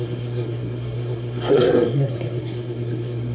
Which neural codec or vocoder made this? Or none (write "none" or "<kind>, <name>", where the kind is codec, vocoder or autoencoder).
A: codec, SNAC